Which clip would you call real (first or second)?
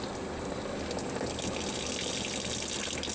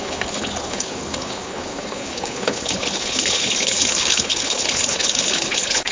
first